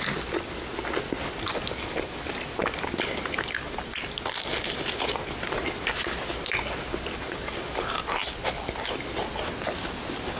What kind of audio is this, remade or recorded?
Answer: recorded